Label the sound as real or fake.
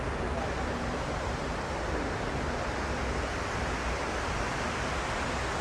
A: real